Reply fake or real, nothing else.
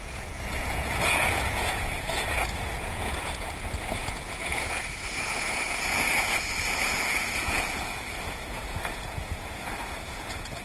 fake